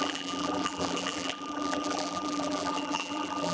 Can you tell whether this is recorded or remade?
remade